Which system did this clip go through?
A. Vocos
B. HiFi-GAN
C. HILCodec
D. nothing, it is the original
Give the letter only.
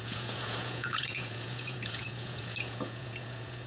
A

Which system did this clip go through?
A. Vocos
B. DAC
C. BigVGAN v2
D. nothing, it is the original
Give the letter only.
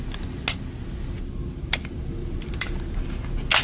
D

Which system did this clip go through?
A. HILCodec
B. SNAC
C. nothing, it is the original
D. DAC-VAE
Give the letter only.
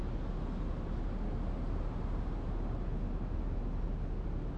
C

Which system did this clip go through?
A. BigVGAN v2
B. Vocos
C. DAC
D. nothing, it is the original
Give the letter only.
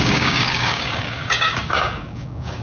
C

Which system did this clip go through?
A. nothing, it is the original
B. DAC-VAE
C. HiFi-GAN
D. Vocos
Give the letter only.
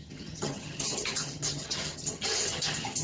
C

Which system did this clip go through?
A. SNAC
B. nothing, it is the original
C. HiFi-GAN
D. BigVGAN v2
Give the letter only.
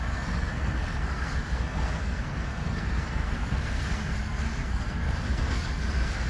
A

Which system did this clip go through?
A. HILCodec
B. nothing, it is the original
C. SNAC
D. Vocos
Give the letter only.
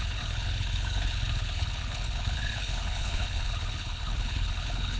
A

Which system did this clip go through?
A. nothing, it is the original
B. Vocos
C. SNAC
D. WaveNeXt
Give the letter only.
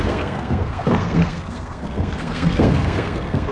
C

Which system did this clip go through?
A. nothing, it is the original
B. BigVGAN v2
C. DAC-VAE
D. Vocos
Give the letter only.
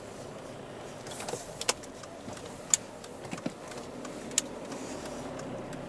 A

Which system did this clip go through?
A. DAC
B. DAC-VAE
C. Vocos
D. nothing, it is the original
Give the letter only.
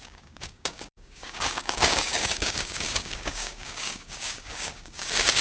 A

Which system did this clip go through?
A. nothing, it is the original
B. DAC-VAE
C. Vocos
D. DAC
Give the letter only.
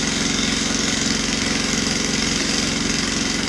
D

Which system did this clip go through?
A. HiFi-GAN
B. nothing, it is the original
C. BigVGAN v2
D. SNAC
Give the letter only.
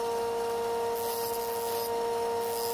B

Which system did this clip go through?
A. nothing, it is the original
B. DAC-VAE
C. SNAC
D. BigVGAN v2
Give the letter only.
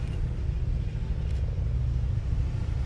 A